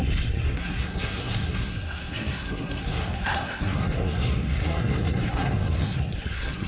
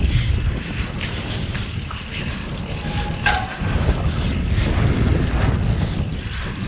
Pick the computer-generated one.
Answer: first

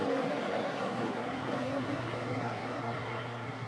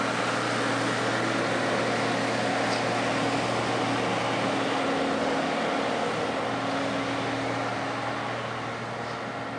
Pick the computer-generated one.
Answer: first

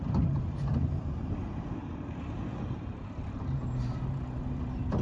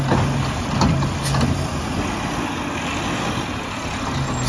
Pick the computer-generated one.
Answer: first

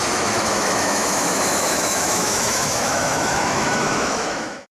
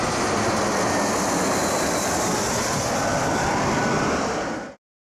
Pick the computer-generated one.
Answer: first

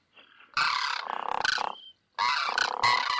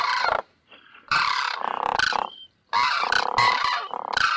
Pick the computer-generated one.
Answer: second